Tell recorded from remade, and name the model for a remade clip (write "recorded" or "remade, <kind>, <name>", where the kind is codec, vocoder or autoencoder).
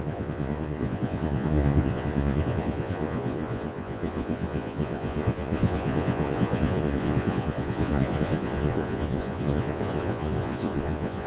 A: remade, vocoder, Vocos